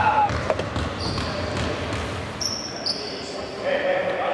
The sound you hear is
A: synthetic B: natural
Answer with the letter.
B